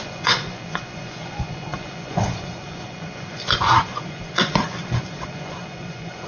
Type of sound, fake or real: fake